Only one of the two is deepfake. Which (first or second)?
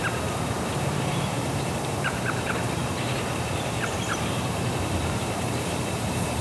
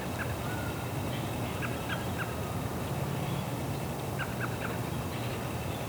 first